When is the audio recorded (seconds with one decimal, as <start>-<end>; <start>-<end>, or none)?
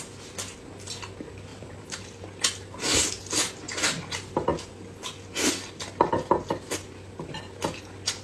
0.0-1.5; 2.2-8.2